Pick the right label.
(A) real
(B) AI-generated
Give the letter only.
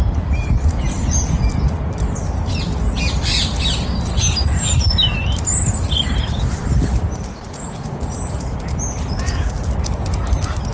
A